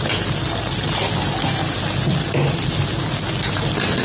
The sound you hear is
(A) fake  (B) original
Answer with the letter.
B